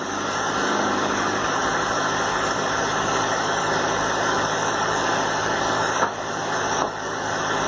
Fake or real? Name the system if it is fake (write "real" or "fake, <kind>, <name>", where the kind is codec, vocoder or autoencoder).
fake, codec, DAC